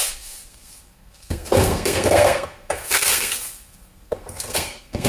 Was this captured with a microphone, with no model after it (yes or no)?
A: no